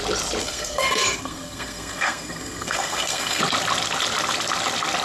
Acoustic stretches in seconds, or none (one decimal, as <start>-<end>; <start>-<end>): 0.0-0.4; 3.4-5.0